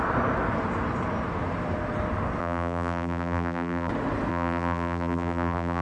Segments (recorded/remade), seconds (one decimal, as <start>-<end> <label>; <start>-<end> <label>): 0.0-2.4 recorded; 2.4-3.9 remade; 3.9-4.3 recorded; 4.3-5.8 remade